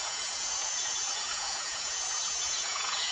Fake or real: fake